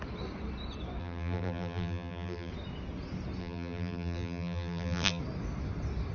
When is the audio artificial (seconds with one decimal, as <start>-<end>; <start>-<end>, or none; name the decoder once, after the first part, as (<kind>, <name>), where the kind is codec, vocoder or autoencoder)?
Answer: 1.0-2.5 (vocoder, BigVGAN v2); 3.4-5.2